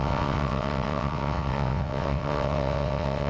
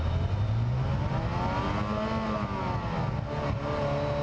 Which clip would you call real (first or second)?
second